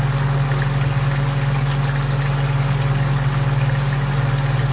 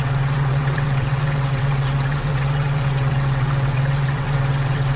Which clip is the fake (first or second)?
second